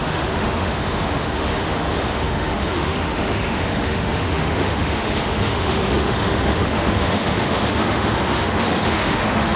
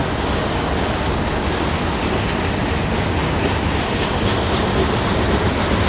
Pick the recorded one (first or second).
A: second